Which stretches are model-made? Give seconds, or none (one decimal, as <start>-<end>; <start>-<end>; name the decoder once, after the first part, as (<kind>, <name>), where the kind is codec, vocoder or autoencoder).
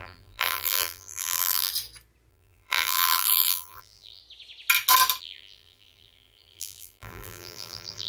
0.0-1.7 (vocoder, BigVGAN v2); 2.3-4.2; 5.2-8.1